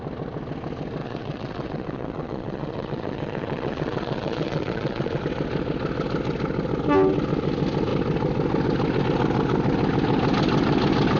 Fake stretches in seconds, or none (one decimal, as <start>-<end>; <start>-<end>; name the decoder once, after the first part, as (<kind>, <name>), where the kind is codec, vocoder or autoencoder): 1.0-5.2 (vocoder, Vocos)